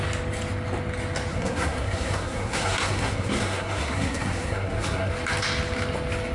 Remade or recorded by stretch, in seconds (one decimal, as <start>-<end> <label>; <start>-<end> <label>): 0.0-1.3 recorded; 1.3-5.1 remade; 5.1-6.3 recorded